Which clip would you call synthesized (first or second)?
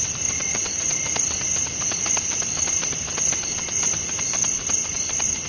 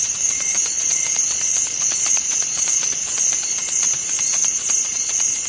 second